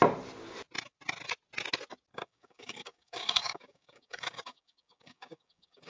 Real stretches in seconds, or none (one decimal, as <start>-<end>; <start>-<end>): 0.0-2.1